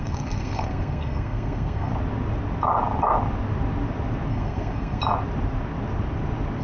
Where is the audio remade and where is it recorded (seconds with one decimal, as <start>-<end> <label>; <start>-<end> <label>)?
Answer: 0.0-1.9 remade; 1.9-4.3 recorded; 4.3-5.0 remade; 5.0-6.6 recorded